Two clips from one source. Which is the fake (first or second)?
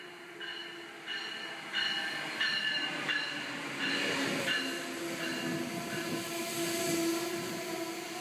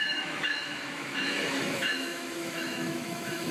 second